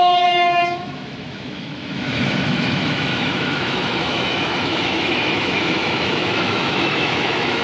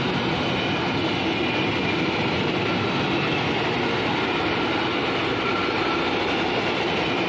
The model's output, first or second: first